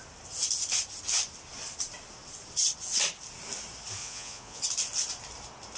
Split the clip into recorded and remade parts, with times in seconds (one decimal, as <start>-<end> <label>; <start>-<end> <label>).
0.0-4.0 recorded; 4.0-4.6 remade; 4.6-5.8 recorded